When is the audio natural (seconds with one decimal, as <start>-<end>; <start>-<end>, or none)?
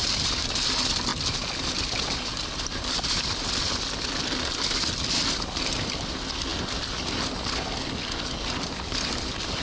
0.0-9.6